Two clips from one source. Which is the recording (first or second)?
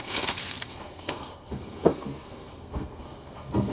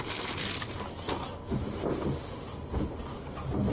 second